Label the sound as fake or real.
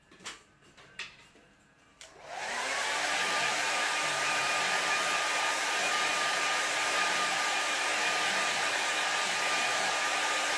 fake